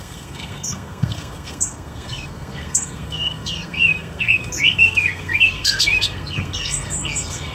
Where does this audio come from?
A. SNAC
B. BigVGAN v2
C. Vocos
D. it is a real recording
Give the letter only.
A